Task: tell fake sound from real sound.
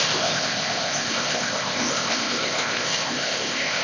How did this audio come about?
fake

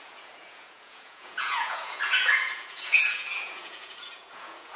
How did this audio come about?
fake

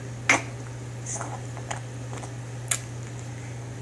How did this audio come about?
real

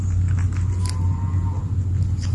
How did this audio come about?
real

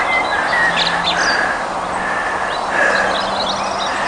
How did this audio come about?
real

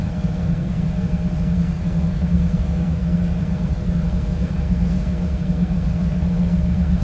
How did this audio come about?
fake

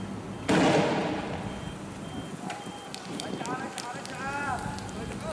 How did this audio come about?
real